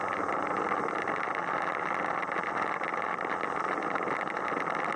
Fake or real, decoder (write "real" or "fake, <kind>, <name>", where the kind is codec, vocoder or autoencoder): real